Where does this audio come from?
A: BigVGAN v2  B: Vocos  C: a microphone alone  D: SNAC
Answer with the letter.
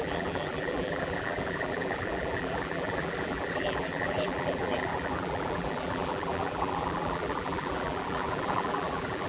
A